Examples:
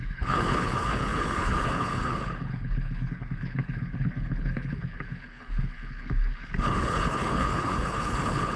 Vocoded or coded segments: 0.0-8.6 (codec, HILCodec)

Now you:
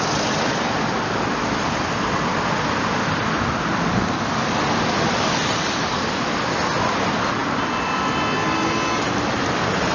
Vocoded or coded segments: none

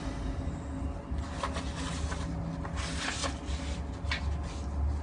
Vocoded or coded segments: none

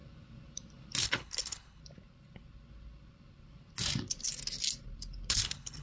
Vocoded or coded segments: 1.0-1.8 (codec, HILCodec); 5.3-5.8

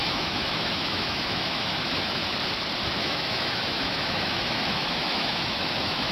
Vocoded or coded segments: 0.0-2.2 (autoencoder, DAC-VAE); 2.9-6.1

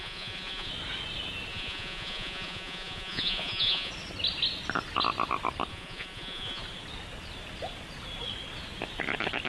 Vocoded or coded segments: 0.0-0.7 (vocoder, Vocos); 1.5-3.9; 5.7-6.6

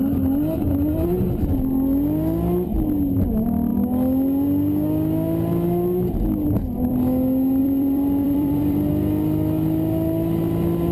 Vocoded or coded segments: 7.6-8.9 (vocoder, BigVGAN v2)

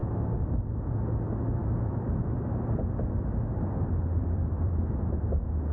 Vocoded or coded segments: 1.6-5.0 (vocoder, BigVGAN v2)